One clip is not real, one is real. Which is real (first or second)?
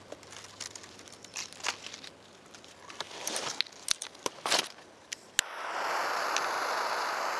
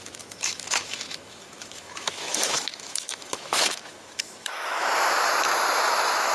first